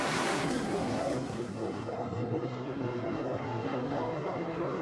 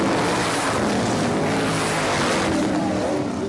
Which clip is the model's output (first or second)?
first